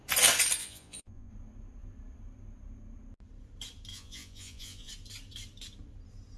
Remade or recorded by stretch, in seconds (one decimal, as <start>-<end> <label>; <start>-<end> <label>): 0.0-0.6 recorded; 0.6-1.3 remade; 1.3-3.9 recorded; 3.9-4.9 remade; 4.9-6.4 recorded